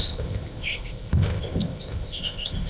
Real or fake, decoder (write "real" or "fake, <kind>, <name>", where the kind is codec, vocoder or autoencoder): fake, codec, ZipCodec